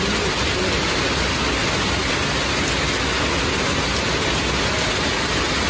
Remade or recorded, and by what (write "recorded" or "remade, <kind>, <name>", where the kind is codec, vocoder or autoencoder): recorded